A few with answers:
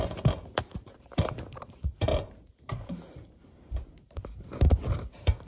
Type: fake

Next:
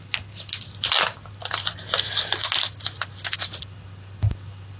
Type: real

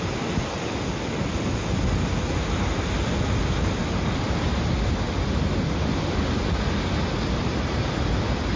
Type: real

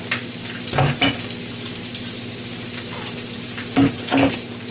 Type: real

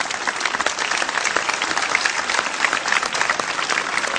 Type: real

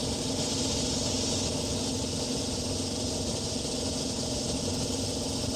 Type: real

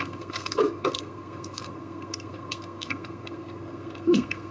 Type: fake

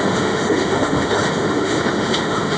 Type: fake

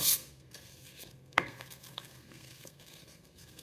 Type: fake